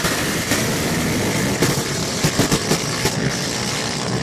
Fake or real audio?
real